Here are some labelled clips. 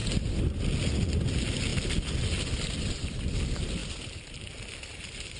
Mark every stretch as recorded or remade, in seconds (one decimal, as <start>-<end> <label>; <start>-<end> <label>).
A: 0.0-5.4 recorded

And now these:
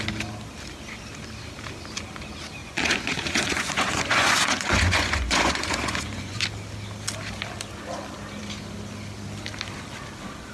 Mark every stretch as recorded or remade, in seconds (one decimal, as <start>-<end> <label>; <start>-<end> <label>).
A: 0.0-2.6 recorded; 2.6-6.4 remade; 6.4-10.5 recorded

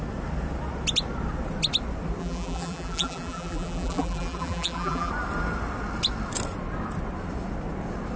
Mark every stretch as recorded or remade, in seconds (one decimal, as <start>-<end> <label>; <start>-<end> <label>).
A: 0.0-2.2 recorded; 2.2-5.1 remade; 5.1-8.2 recorded

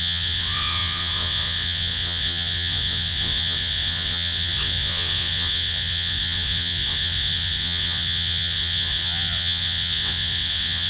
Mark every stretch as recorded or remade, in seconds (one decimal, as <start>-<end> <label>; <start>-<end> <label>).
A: 0.0-10.9 remade

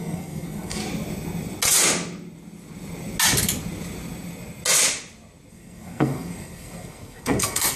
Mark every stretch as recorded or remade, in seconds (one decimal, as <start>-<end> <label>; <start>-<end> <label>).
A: 0.0-0.8 remade; 0.8-5.5 recorded; 5.5-7.8 remade